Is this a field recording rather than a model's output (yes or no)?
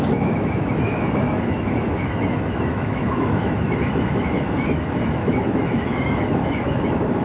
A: no